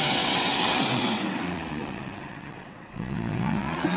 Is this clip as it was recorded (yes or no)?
no